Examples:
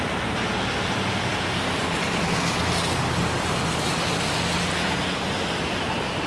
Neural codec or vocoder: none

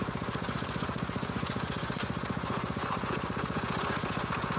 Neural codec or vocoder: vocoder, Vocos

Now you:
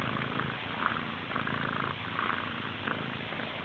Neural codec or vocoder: none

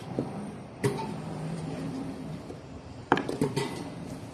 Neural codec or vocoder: vocoder, BigVGAN v2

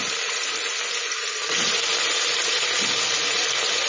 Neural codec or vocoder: none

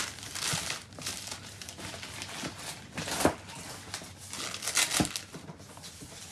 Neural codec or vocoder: none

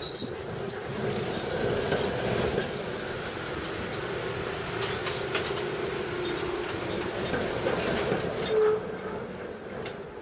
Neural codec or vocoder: none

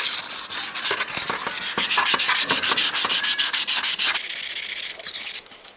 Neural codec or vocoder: none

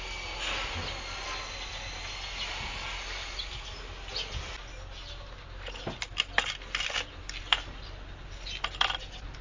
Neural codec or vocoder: none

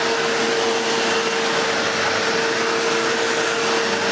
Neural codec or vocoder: none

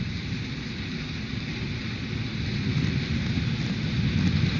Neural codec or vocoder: none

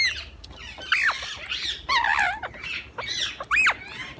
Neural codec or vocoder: none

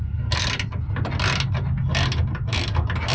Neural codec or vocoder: none